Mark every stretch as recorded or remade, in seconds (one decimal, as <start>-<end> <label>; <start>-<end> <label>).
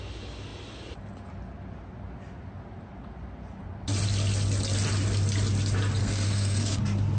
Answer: 0.0-6.0 recorded; 6.0-6.8 remade; 6.8-7.2 recorded